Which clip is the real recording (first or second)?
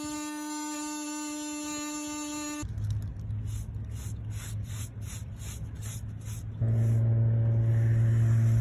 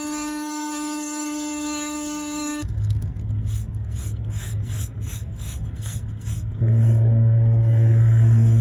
first